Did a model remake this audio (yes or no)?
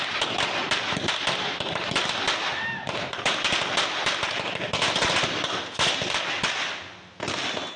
no